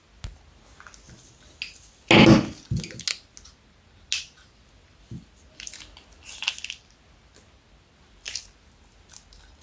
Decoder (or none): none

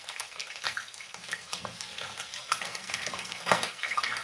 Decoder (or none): codec, SNAC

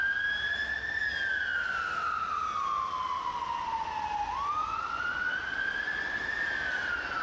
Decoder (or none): none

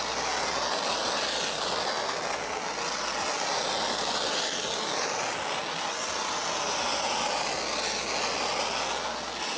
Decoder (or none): none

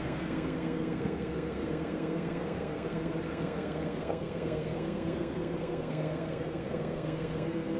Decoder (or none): codec, SNAC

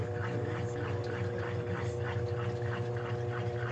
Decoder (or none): none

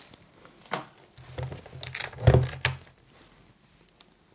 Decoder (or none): none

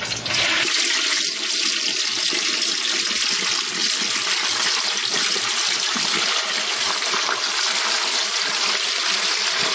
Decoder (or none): none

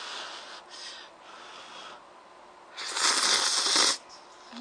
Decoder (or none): none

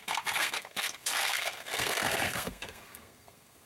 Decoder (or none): codec, SNAC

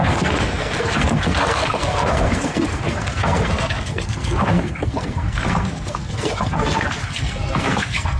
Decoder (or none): codec, SNAC